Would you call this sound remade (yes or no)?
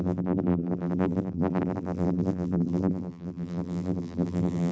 yes